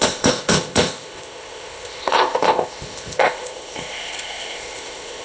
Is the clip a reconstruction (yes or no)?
yes